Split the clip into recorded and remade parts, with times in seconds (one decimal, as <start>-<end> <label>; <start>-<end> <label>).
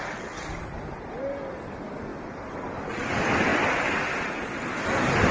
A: 0.0-5.3 recorded